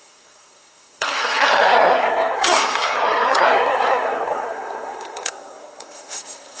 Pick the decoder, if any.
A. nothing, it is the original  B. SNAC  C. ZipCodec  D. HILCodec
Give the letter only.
B